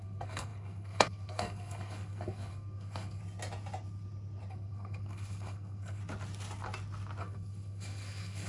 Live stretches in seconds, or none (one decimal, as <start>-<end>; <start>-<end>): 3.2-4.5; 6.0-7.2